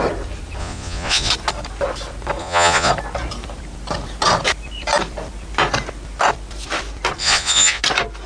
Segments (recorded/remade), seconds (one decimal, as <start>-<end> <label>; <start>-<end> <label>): 0.0-0.6 recorded; 0.6-1.3 remade; 1.3-2.4 recorded; 2.4-2.9 remade; 2.9-7.2 recorded; 7.2-7.8 remade; 7.8-8.3 recorded